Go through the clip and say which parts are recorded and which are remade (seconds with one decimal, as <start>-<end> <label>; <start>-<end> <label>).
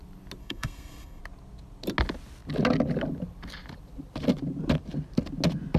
0.0-0.4 recorded; 0.4-1.2 remade; 1.2-5.8 recorded